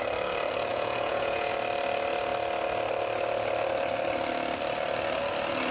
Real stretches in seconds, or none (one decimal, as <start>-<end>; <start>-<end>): 0.0-0.7; 1.5-5.7